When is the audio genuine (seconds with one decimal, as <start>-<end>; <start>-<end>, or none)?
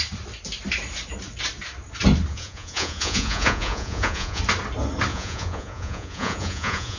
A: 0.0-2.3; 4.4-5.1